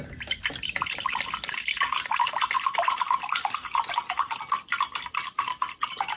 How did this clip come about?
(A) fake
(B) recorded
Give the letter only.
B